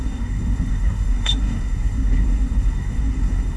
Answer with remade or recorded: remade